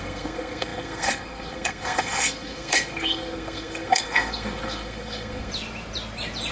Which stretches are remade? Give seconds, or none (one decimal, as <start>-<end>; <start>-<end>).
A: 0.0-5.5